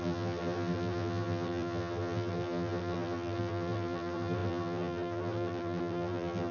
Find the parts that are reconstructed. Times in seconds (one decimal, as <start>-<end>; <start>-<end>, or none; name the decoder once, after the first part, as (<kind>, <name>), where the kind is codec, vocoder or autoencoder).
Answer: 0.0-6.5 (vocoder, BigVGAN v2)